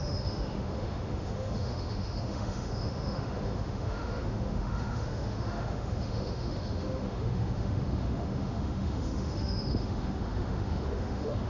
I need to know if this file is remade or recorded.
remade